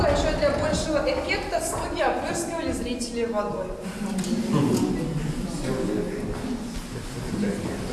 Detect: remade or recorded recorded